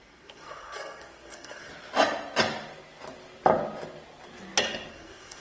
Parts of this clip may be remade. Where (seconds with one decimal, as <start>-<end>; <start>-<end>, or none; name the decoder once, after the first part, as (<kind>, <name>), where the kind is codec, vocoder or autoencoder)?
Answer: 0.0-1.7 (codec, SNAC); 4.9-5.4